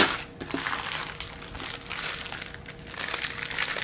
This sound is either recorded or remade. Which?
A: recorded